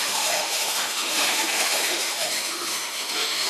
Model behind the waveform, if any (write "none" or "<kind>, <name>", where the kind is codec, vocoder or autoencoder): autoencoder, DAC-VAE